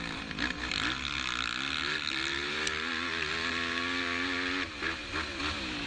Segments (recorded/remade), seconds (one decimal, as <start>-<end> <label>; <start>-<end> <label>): 0.0-5.9 recorded